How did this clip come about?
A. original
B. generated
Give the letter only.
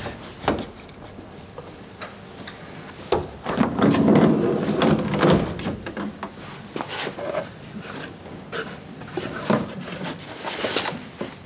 A